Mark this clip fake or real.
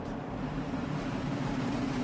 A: fake